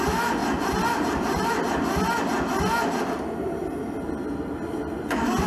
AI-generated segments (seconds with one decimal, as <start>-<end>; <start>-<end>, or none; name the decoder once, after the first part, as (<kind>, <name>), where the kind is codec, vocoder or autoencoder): 0.4-1.5 (vocoder, BigVGAN v2)